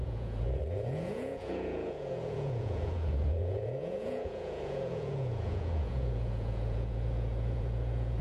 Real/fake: fake